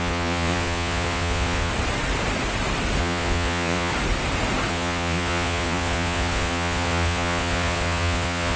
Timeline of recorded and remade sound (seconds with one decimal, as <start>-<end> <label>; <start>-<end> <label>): 0.0-1.7 remade; 1.7-3.0 recorded; 3.0-3.9 remade; 3.9-4.7 recorded; 4.7-8.6 remade

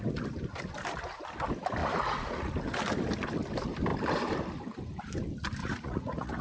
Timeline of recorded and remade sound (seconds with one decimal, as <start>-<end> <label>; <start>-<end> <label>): 0.0-1.8 recorded; 1.8-2.5 remade; 2.5-5.6 recorded; 5.6-6.4 remade

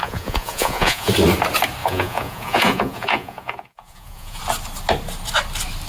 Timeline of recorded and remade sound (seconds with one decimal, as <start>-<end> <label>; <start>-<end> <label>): 0.0-1.1 remade; 1.1-1.8 recorded; 1.8-4.4 remade; 4.4-5.9 recorded

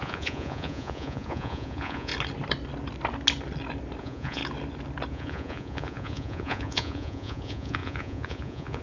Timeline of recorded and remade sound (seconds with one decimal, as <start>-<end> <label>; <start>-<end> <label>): 0.0-2.1 remade; 2.1-4.0 recorded; 4.0-4.4 remade; 4.4-5.1 recorded; 5.1-8.8 remade

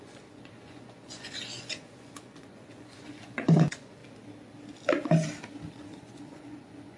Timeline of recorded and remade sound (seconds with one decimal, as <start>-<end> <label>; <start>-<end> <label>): 0.0-4.0 remade; 4.0-5.7 recorded; 5.7-7.0 remade

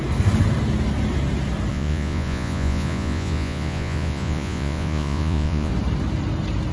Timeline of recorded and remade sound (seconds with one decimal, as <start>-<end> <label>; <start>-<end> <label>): 0.0-1.7 recorded; 1.7-5.7 remade; 5.7-6.7 recorded

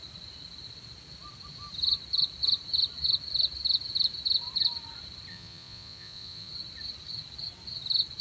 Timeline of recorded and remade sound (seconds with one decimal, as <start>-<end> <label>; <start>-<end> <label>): 0.0-5.3 recorded; 5.3-6.5 remade; 6.5-8.2 recorded

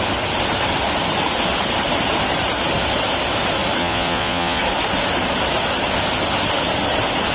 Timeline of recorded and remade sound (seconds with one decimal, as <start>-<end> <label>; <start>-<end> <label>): 0.0-3.8 recorded; 3.8-4.6 remade; 4.6-7.3 recorded